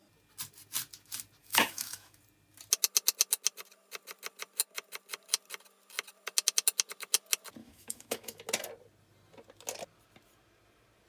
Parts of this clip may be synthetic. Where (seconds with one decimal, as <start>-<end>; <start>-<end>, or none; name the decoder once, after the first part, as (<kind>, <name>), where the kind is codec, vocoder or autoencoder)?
1.4-2.2 (autoencoder, DAC-VAE); 7.6-8.4